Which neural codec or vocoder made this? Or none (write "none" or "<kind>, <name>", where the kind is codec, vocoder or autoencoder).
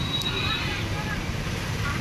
vocoder, BigVGAN v2